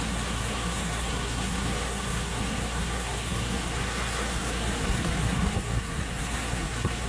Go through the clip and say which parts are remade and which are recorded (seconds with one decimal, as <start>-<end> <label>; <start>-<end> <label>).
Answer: 0.0-7.1 remade

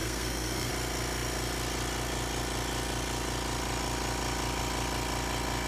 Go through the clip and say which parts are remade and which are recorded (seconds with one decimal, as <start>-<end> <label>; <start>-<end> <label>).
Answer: 0.0-0.7 remade; 0.7-5.7 recorded

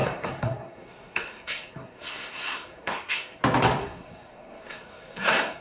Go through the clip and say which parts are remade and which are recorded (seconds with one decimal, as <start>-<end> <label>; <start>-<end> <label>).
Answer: 0.0-3.4 remade; 3.4-3.8 recorded; 3.8-5.6 remade